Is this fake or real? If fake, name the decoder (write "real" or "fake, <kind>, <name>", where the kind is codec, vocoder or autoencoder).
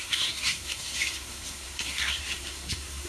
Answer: fake, codec, SNAC